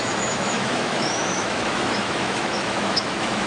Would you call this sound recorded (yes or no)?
no